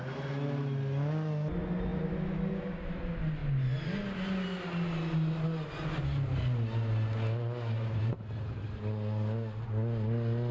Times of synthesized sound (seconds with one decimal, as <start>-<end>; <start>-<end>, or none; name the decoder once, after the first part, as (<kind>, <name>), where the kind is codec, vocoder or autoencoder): none